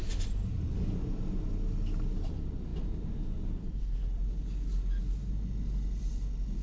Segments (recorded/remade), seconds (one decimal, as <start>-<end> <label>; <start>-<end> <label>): 0.0-6.6 recorded